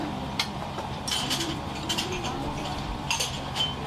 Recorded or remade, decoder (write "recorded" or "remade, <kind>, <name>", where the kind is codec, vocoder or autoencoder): remade, vocoder, BigVGAN v2